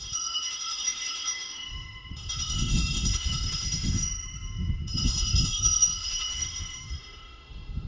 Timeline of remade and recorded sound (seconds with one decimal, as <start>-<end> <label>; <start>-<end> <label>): 0.0-7.9 remade